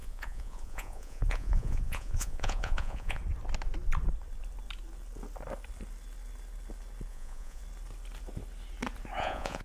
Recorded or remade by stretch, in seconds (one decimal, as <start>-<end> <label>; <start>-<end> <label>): 0.0-3.2 remade; 3.2-7.1 recorded; 7.1-7.6 remade; 7.6-9.2 recorded; 9.2-9.6 remade